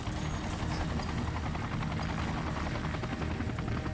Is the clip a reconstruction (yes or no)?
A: no